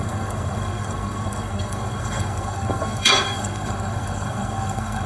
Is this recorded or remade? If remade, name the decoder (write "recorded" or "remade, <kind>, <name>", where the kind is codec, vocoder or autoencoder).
remade, codec, SNAC